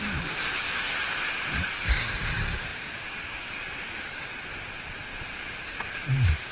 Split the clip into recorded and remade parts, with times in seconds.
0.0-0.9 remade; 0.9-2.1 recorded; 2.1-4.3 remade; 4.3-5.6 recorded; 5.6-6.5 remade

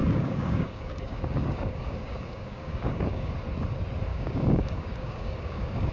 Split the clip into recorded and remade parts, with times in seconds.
0.0-3.3 remade; 3.3-4.1 recorded; 4.1-5.9 remade